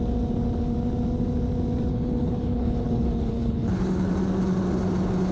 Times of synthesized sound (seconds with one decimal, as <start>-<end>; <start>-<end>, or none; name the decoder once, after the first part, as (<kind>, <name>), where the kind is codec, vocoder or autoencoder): 1.9-4.1 (codec, HILCodec)